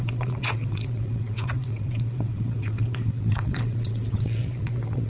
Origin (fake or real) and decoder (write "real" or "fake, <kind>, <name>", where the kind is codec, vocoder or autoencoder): fake, vocoder, WaveNeXt